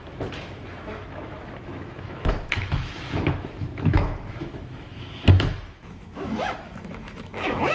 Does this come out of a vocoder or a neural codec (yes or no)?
yes